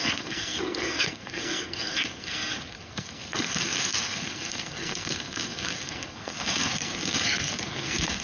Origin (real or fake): fake